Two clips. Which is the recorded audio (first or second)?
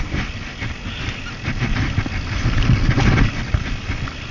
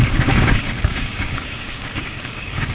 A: first